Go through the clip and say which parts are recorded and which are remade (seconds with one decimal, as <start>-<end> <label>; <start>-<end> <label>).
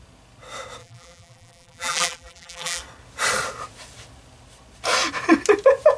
0.0-0.8 recorded; 0.8-2.8 remade; 2.8-6.0 recorded